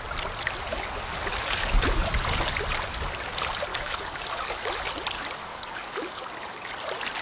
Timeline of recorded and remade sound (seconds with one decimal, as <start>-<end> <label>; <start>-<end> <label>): 0.0-0.7 recorded; 0.7-2.1 remade; 2.1-3.7 recorded; 3.7-4.7 remade; 4.7-5.5 recorded; 5.5-6.8 remade; 6.8-7.2 recorded